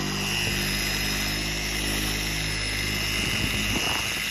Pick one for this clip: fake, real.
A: real